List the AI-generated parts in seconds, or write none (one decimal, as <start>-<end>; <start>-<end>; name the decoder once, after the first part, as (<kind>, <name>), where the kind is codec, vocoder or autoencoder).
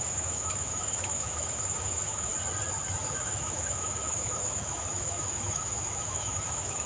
0.0-2.3 (autoencoder, DAC-VAE); 3.0-6.9